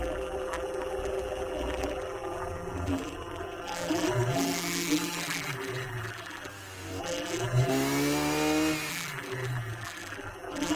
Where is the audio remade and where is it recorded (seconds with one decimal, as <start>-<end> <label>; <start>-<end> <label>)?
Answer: 0.0-6.5 remade; 6.5-7.0 recorded; 7.0-7.7 remade; 7.7-8.9 recorded; 8.9-10.8 remade